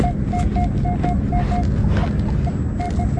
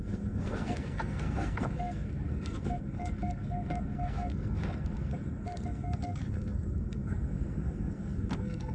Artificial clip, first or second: second